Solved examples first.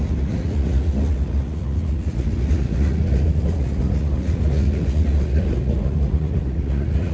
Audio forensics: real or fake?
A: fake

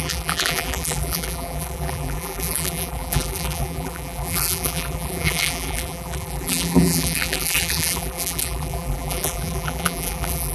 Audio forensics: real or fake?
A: fake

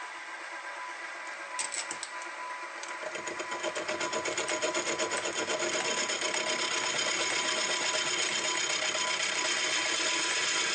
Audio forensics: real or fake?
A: real